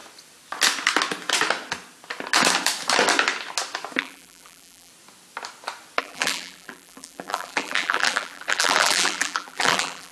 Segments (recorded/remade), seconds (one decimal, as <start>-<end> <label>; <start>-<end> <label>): 0.0-4.0 recorded; 4.0-4.9 remade; 4.9-6.0 recorded; 6.0-10.1 remade